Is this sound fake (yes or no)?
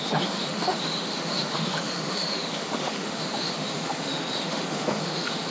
yes